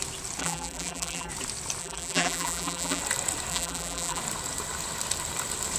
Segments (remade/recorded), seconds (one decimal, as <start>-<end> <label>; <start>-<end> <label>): 0.0-0.4 recorded; 0.4-1.3 remade; 1.3-1.8 recorded; 1.8-3.0 remade; 3.0-3.5 recorded; 3.5-4.2 remade; 4.2-5.8 recorded